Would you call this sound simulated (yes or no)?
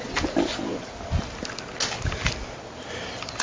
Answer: no